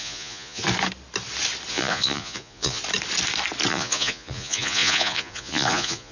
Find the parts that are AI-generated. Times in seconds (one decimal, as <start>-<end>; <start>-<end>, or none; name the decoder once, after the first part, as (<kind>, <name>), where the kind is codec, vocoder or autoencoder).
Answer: 0.0-0.6 (vocoder, Vocos); 1.7-2.8; 3.7-6.1